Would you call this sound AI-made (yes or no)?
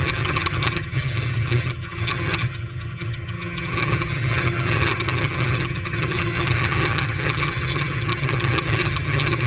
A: yes